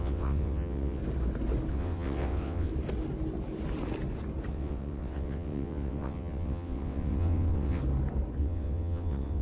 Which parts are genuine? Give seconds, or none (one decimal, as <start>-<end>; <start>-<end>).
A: 1.0-1.7; 2.7-4.5; 7.8-8.4